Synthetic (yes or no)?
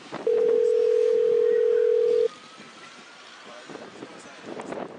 yes